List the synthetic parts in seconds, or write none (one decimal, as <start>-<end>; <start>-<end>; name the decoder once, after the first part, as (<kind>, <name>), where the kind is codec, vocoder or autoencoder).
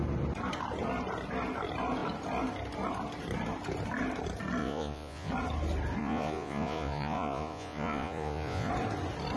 4.6-5.3 (vocoder, Vocos); 6.0-8.7